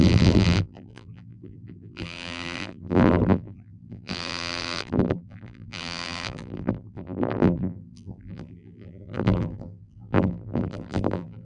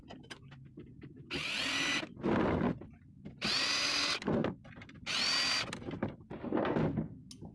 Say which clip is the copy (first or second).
first